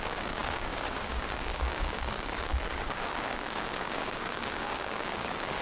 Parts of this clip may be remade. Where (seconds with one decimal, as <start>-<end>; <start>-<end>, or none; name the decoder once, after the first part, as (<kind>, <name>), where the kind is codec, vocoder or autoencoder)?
0.0-5.6 (codec, DAC)